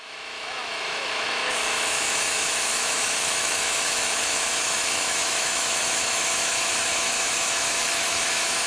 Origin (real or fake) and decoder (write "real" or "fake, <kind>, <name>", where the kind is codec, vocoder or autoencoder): fake, autoencoder, DAC-VAE